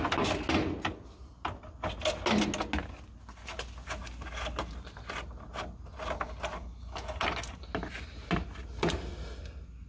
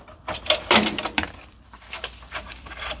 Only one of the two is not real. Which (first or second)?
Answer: second